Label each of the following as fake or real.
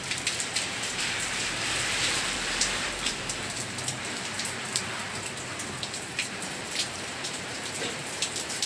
fake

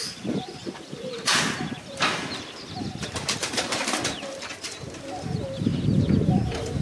fake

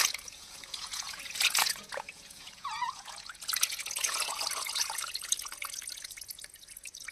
fake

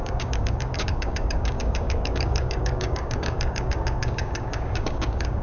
fake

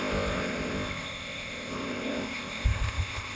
fake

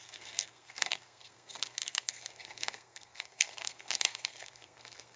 fake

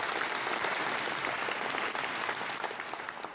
real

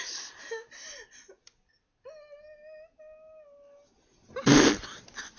real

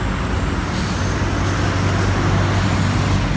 real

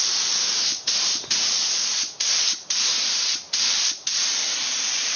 fake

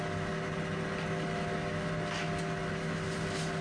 real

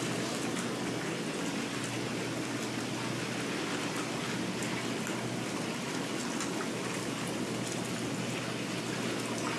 real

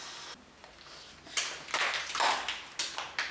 real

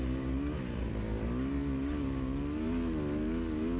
real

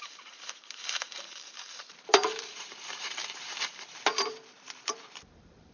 fake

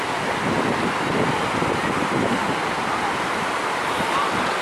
real